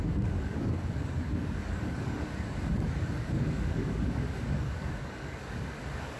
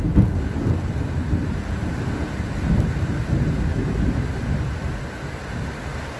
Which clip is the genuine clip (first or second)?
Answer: second